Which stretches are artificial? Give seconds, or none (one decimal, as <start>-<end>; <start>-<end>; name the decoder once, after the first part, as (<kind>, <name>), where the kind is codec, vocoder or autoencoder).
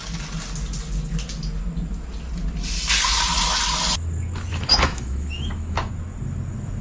4.5-5.9 (autoencoder, DAC-VAE)